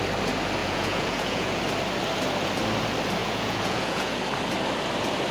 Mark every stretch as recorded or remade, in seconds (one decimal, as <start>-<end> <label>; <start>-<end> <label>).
0.0-0.6 recorded; 0.6-1.6 remade; 1.6-3.2 recorded; 3.2-4.2 remade; 4.2-5.3 recorded